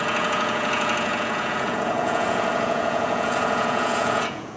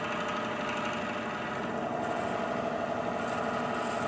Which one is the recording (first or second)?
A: second